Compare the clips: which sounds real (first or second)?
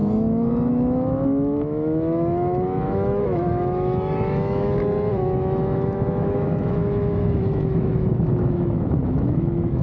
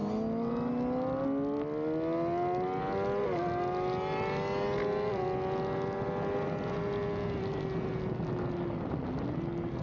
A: second